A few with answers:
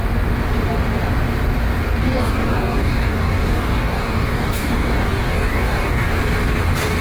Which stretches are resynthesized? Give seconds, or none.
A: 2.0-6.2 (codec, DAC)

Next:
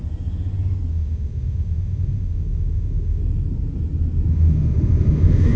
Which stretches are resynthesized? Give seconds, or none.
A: 0.9-3.2 (autoencoder, DAC-VAE); 4.3-5.6

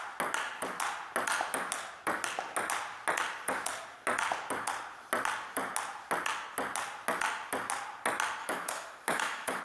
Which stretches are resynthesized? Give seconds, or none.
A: 8.4-9.6 (autoencoder, DAC-VAE)